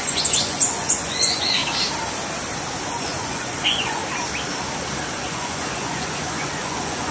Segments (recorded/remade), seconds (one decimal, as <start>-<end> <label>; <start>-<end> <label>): 0.0-1.6 remade; 1.6-2.9 recorded; 2.9-4.0 remade; 4.0-5.1 recorded; 5.1-7.1 remade